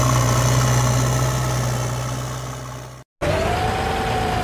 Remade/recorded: recorded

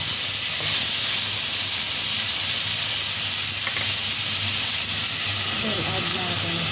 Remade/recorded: recorded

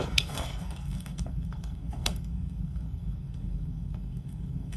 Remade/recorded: remade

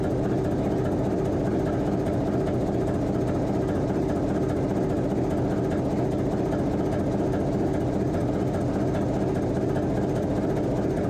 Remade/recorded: recorded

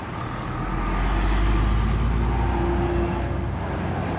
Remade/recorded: recorded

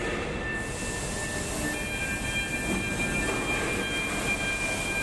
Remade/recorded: recorded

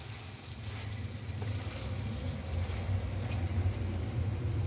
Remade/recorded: recorded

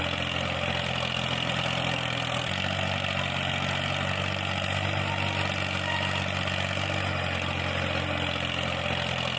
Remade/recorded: recorded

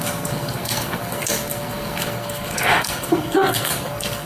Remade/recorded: remade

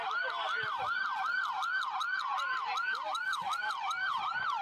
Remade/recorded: recorded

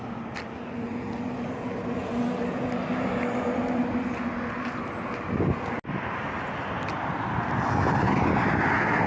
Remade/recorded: recorded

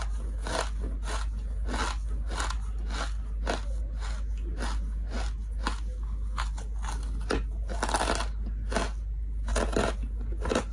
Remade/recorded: recorded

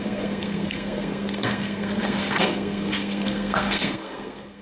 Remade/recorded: remade